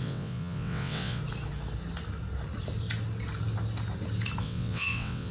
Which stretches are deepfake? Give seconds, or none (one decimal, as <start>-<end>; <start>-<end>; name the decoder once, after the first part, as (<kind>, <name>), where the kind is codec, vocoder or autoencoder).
0.0-1.2 (vocoder, WaveNeXt); 4.4-5.3

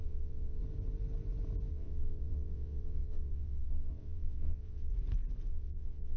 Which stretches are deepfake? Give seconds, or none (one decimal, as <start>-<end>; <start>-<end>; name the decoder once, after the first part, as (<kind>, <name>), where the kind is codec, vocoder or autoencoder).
0.0-0.6 (vocoder, WaveNeXt); 1.7-4.9; 5.5-6.2

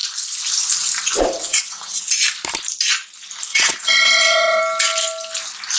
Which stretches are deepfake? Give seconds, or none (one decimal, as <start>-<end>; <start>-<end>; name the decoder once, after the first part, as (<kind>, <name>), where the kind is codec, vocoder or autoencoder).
1.5-2.0 (vocoder, WaveNeXt); 3.5-4.6

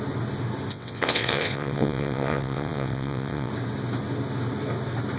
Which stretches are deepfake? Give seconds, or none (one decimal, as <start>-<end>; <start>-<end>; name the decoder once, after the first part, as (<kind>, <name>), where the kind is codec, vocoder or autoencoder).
0.7-3.5 (vocoder, WaveNeXt)

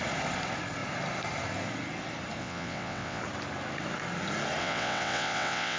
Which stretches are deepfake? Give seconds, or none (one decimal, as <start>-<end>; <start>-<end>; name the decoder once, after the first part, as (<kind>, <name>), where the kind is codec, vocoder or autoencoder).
2.4-3.2 (vocoder, WaveNeXt); 4.6-5.8

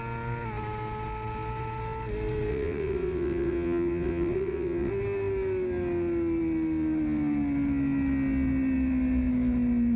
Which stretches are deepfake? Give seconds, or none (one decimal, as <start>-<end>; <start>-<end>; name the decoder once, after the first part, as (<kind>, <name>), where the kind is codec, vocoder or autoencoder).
2.5-4.9 (vocoder, WaveNeXt)

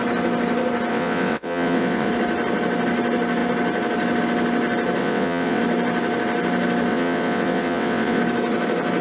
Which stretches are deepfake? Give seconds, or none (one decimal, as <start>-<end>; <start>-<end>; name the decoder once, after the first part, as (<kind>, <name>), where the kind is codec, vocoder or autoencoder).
0.9-2.1 (vocoder, WaveNeXt); 5.0-5.6; 6.9-8.2